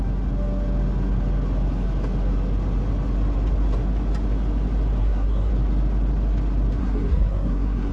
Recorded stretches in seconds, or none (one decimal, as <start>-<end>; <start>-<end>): 0.0-5.0; 5.5-6.8